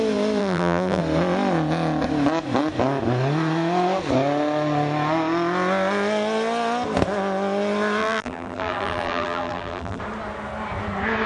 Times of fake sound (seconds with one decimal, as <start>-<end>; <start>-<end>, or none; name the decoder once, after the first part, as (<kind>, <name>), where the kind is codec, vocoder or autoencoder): 0.4-1.0 (vocoder, BigVGAN v2); 8.0-10.0